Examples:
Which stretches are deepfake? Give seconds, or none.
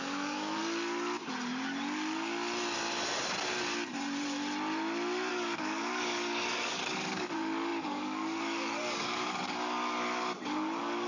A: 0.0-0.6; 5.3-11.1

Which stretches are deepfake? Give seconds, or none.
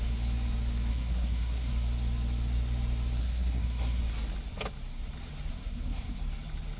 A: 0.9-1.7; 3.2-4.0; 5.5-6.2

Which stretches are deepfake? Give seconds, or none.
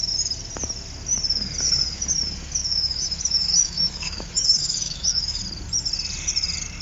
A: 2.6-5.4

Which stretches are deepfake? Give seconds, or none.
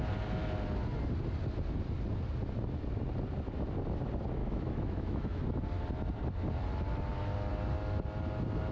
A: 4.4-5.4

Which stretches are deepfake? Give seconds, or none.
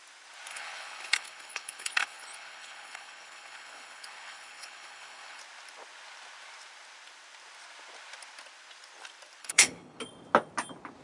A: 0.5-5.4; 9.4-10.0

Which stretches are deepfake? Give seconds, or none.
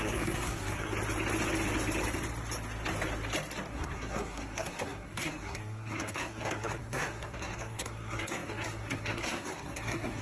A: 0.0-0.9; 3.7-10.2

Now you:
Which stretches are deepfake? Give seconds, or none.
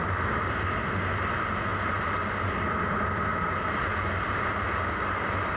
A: none